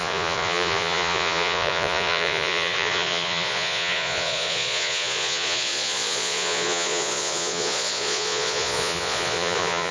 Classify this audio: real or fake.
fake